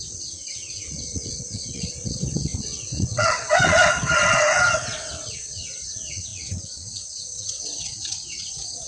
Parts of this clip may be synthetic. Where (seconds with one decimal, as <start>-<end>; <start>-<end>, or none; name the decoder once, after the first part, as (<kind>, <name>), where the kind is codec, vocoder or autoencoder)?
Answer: 0.0-8.9 (vocoder, WaveNeXt)